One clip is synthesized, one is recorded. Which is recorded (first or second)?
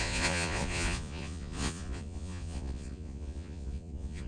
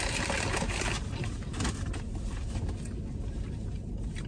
second